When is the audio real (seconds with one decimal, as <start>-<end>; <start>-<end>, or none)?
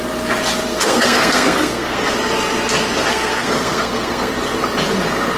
0.0-0.7; 2.1-3.1; 4.3-5.4